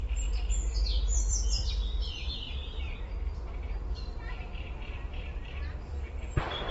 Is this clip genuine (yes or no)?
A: no